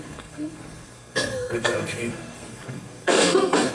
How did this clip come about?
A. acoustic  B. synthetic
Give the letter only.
B